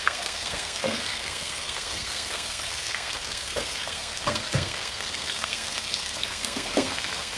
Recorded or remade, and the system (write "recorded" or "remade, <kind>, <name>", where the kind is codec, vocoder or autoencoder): remade, codec, SNAC